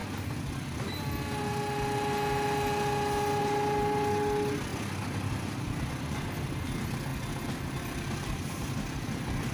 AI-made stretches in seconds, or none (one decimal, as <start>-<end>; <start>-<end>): 3.4-4.7; 5.9-9.5